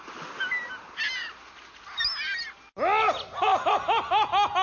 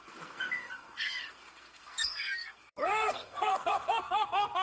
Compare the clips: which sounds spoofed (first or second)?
second